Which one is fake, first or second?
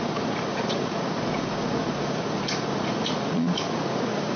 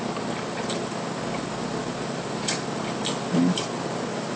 first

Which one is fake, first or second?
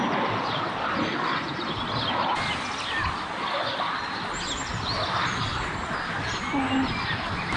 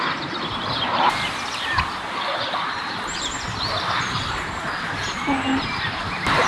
second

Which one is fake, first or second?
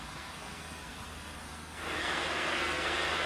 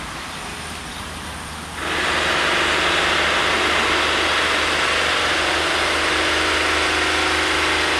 first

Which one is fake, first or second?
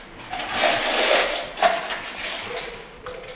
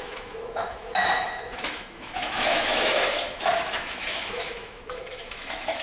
second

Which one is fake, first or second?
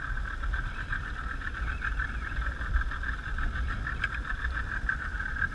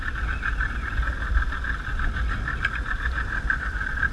first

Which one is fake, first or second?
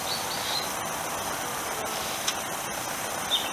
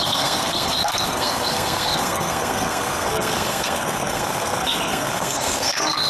second